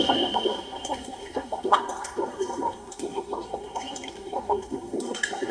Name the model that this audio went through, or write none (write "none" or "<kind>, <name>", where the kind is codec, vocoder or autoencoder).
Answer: codec, SNAC